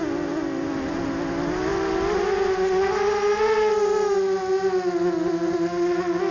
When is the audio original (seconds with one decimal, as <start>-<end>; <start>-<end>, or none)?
0.0-6.3